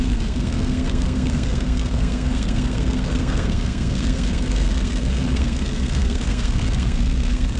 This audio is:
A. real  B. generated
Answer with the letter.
B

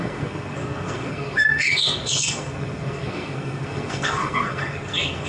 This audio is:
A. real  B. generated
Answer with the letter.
B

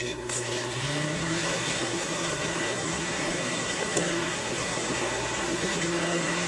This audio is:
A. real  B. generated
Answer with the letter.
B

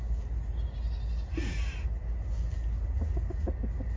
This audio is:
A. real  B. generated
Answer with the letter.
A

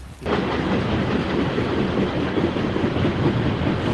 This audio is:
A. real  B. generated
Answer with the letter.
A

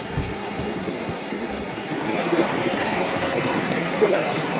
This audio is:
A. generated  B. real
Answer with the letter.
A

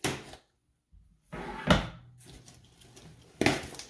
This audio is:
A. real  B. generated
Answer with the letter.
A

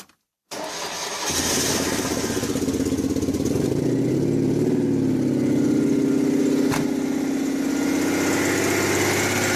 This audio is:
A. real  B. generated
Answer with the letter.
A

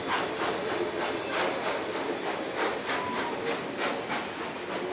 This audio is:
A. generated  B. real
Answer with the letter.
B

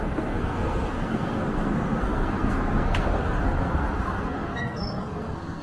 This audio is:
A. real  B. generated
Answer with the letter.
B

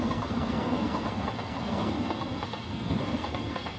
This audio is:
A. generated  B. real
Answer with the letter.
A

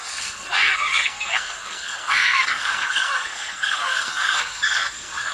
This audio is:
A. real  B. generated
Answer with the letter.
B